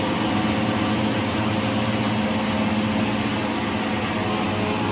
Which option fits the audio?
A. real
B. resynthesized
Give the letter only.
A